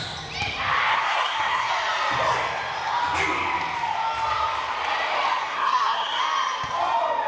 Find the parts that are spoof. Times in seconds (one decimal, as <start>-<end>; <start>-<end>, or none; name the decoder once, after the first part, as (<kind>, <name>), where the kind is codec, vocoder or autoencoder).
0.9-1.7 (codec, SNAC); 5.4-6.2